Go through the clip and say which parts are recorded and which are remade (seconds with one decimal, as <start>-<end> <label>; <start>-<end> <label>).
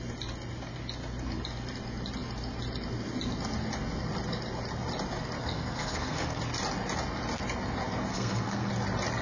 0.0-5.4 recorded; 5.4-6.4 remade; 6.4-8.1 recorded; 8.1-8.7 remade; 8.7-9.2 recorded